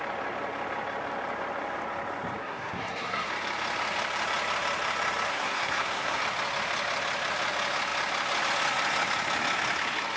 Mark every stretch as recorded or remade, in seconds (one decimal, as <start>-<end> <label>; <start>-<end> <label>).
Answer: 0.0-2.4 recorded; 2.4-3.3 remade; 3.3-5.3 recorded; 5.3-6.2 remade; 6.2-10.2 recorded